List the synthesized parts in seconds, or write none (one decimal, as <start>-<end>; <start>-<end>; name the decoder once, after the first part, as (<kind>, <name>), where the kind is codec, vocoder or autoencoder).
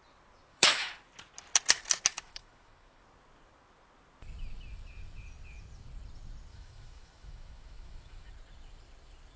0.5-1.0 (autoencoder, DAC-VAE); 2.1-3.0; 6.5-8.3